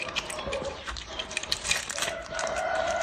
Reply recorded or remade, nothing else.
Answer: remade